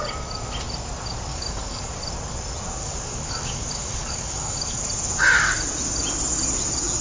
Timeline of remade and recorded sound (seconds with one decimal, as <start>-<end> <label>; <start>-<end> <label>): 0.0-1.3 recorded; 1.3-1.9 remade; 1.9-2.8 recorded; 2.8-4.9 remade; 4.9-7.0 recorded